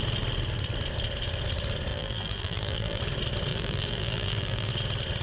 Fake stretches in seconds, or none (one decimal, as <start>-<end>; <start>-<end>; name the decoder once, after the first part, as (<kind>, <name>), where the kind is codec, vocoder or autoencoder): 1.9-3.0 (vocoder, BigVGAN v2); 3.5-4.7